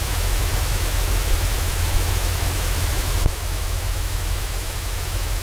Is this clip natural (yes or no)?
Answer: no